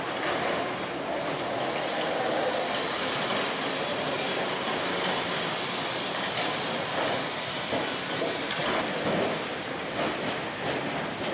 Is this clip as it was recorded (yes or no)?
yes